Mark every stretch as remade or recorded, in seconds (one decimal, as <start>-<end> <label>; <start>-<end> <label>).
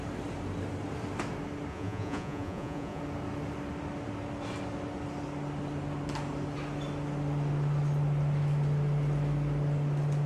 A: 0.0-1.7 recorded; 1.7-3.0 remade; 3.0-10.3 recorded